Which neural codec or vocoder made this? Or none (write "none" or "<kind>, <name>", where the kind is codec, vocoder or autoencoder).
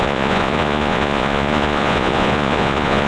vocoder, Vocos